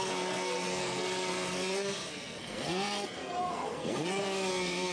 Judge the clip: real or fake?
fake